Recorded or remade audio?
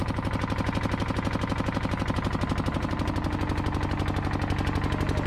recorded